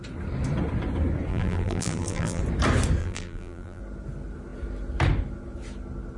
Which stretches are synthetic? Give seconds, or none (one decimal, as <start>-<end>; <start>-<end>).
1.3-2.4; 3.0-3.8